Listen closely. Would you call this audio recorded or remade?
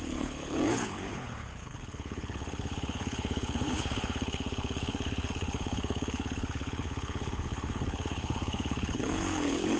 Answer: remade